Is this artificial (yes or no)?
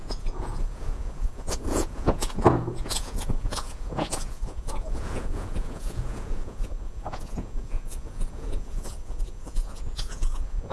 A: yes